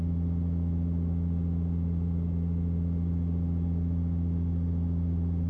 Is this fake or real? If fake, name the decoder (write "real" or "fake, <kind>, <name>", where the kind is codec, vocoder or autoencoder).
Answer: real